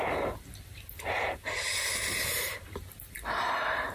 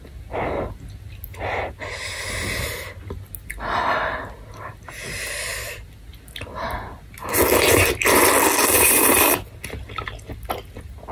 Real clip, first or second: second